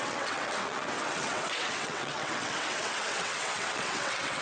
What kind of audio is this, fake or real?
fake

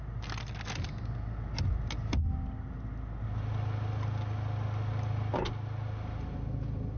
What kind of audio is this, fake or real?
real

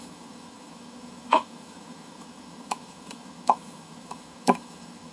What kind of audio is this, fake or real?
fake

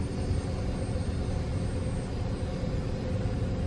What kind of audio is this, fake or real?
real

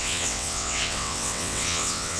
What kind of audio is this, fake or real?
fake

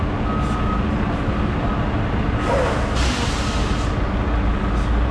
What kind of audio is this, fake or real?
real